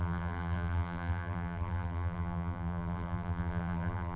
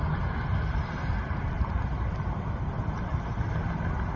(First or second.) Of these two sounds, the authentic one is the second